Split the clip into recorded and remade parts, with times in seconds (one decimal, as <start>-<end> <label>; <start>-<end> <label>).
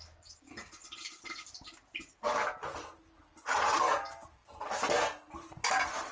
0.0-6.1 recorded